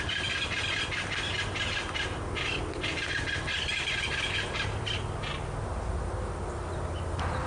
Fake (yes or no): no